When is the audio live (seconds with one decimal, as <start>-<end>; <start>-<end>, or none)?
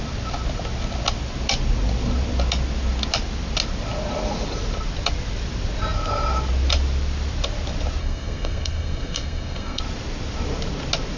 0.0-8.0; 9.8-11.2